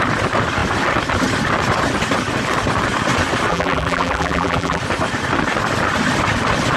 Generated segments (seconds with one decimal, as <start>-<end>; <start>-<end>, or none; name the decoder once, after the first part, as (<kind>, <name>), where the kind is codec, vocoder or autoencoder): 3.5-4.8 (vocoder, BigVGAN v2)